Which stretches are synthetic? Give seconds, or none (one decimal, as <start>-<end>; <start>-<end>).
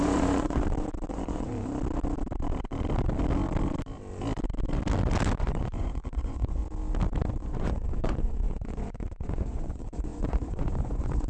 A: 0.0-0.6; 1.1-1.5; 5.4-6.6; 7.3-11.3